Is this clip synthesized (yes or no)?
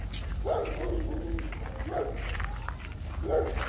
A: no